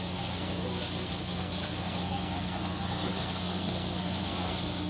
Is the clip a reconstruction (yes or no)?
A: yes